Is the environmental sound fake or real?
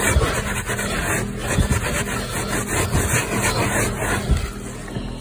real